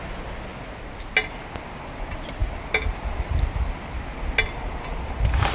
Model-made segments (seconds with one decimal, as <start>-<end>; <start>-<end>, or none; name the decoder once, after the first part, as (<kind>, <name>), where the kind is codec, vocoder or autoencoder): none